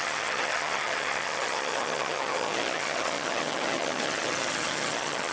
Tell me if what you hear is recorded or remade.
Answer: remade